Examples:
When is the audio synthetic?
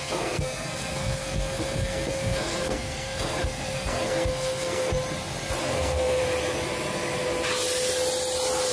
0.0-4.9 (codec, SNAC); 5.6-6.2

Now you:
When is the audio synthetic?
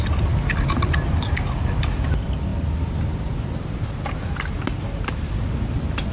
none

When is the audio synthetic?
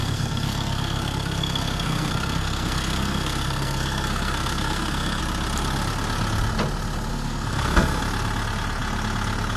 0.0-5.2 (codec, SNAC); 7.1-8.0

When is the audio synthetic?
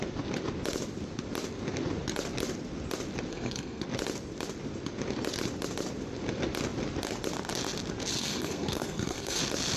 3.3-3.8 (codec, SNAC); 8.1-9.4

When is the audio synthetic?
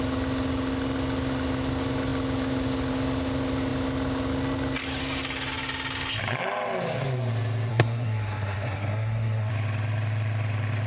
7.7-9.5 (codec, SNAC)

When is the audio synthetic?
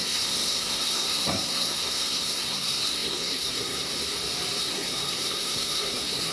0.0-3.9 (codec, SNAC); 4.6-6.3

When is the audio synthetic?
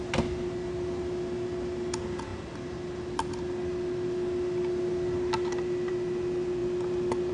none